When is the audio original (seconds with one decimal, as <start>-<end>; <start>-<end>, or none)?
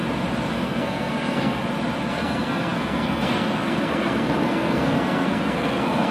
0.0-0.5; 1.6-2.1